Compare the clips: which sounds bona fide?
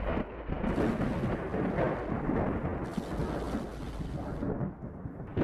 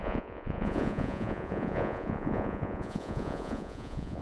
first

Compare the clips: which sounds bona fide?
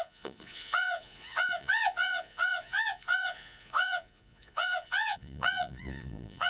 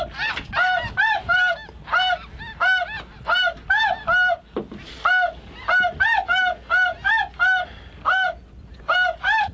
second